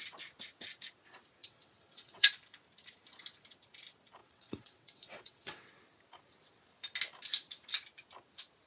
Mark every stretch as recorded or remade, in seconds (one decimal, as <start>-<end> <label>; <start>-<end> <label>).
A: 0.0-1.4 recorded; 1.4-2.3 remade; 2.3-4.2 recorded; 4.2-5.8 remade; 5.8-8.7 recorded